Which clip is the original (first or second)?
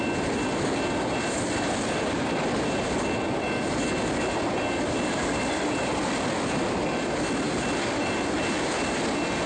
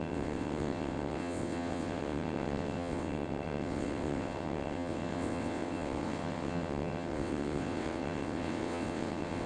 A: first